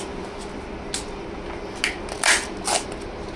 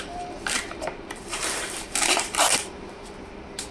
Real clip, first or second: first